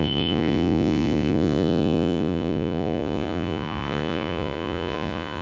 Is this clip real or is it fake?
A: fake